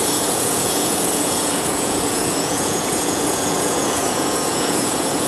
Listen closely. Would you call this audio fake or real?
fake